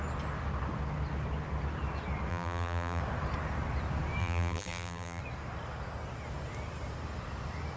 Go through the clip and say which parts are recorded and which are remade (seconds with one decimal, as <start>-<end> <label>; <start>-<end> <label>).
0.0-2.3 recorded; 2.3-3.0 remade; 3.0-4.2 recorded; 4.2-5.2 remade; 5.2-7.8 recorded